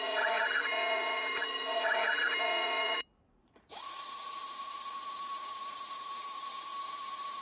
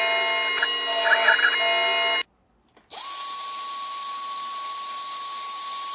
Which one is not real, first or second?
first